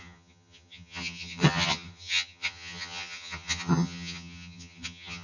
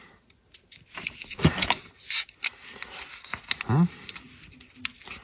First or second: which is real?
second